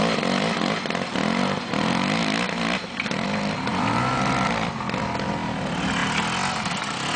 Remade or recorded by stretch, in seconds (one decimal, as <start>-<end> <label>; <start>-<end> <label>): 0.0-7.2 recorded